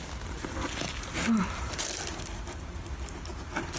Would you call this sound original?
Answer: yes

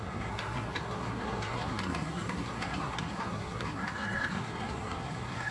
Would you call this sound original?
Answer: no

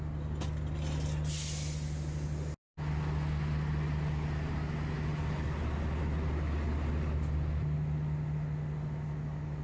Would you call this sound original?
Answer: yes